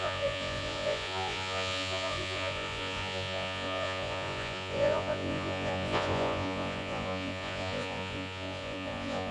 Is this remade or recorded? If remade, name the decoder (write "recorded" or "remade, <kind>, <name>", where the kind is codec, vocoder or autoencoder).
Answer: remade, vocoder, Vocos